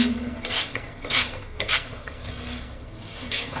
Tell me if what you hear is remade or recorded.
remade